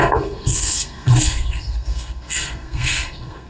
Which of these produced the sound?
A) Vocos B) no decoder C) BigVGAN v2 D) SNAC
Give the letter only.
D